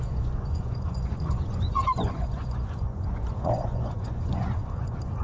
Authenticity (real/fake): fake